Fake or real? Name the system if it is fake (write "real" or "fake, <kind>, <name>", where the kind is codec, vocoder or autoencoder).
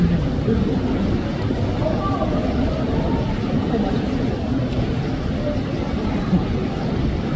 real